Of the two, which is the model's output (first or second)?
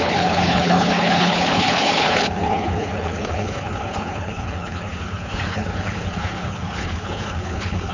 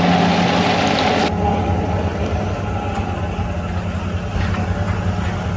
first